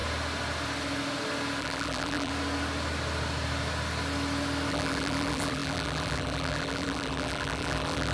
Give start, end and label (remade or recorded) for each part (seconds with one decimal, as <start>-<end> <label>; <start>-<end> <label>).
0.0-1.6 recorded; 1.6-2.3 remade; 2.3-4.7 recorded; 4.7-8.1 remade